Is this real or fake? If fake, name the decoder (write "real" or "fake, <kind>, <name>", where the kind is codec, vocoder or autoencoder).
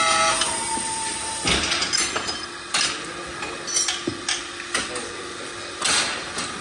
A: real